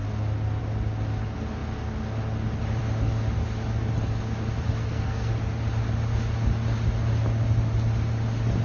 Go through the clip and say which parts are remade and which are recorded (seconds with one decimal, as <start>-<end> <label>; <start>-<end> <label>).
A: 0.0-4.8 recorded; 4.8-5.3 remade; 5.3-8.6 recorded